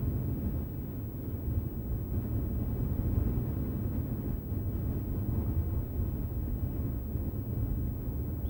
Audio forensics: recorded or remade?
recorded